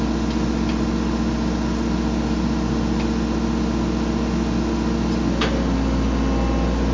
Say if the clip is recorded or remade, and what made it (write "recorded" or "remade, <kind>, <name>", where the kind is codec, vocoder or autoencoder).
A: recorded